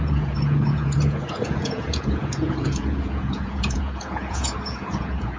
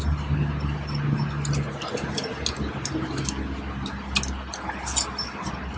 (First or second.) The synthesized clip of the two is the first